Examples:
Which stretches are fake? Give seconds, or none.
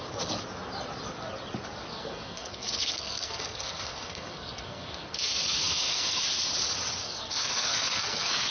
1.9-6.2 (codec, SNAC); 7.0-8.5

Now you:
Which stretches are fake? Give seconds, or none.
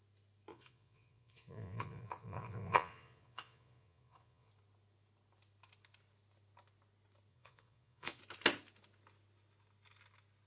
0.5-4.5 (vocoder, Vocos); 7.3-8.2